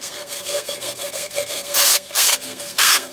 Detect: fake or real fake